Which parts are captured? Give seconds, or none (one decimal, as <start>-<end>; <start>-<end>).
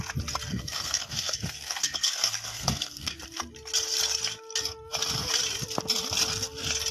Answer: 0.0-0.5; 3.2-6.9